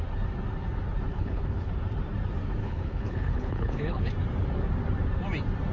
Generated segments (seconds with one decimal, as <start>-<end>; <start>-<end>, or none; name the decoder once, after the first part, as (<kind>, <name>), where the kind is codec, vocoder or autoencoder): 1.1-1.7 (codec, HILCodec); 2.6-4.1